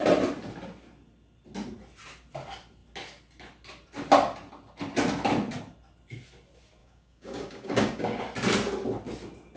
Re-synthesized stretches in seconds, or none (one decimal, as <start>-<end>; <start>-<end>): 6.8-8.2